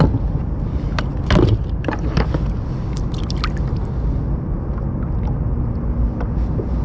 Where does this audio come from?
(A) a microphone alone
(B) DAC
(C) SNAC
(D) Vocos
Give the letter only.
A